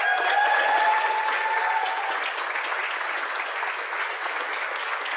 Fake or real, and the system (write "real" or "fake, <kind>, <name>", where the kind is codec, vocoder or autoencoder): fake, vocoder, Vocos